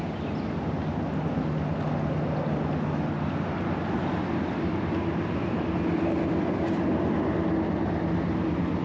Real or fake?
real